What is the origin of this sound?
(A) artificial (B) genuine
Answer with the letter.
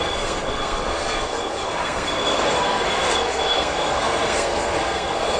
A